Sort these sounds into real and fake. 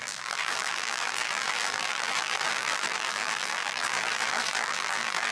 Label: fake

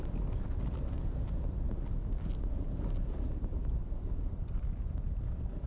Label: real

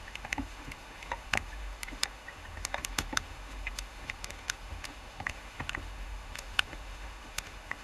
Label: fake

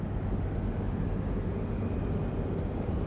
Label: real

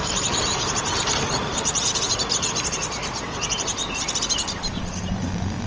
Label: fake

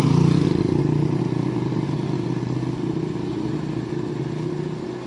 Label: real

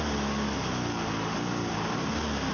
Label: real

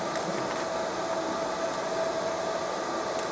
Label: real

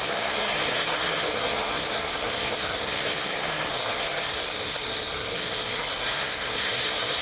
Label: fake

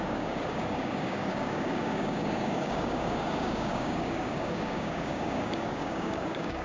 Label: fake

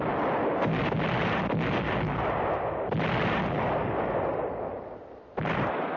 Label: real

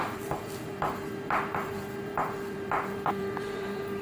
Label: fake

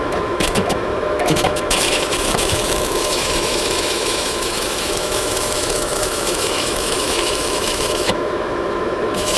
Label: fake